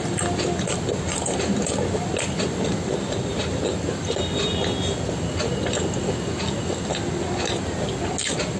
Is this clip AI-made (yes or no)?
no